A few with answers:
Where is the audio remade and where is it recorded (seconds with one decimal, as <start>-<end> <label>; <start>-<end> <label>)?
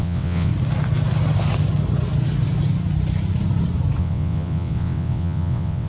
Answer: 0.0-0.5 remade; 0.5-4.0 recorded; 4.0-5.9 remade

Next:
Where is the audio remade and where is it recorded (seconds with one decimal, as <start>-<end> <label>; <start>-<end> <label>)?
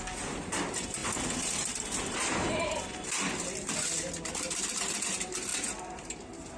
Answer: 0.0-6.6 recorded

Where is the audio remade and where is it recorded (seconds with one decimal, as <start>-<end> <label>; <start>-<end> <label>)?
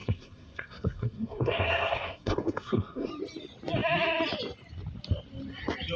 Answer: 0.0-3.1 remade; 3.1-6.0 recorded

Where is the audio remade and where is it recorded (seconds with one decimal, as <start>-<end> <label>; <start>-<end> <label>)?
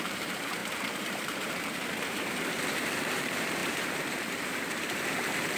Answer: 0.0-5.6 remade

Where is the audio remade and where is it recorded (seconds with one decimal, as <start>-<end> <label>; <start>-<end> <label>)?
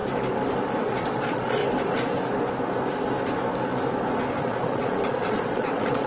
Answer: 0.0-0.8 recorded; 0.8-1.6 remade; 1.6-4.4 recorded; 4.4-6.1 remade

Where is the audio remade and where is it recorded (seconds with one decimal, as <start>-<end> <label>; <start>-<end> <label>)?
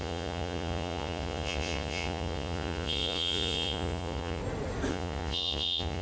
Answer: 0.0-4.4 remade; 4.4-4.9 recorded; 4.9-6.0 remade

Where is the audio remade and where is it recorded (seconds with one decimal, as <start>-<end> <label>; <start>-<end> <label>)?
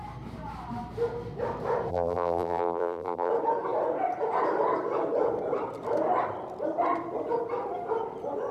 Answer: 0.0-1.9 recorded; 1.9-3.3 remade; 3.3-8.5 recorded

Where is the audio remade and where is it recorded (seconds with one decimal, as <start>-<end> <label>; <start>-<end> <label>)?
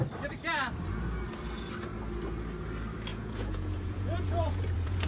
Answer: 0.0-3.1 recorded; 3.1-5.1 remade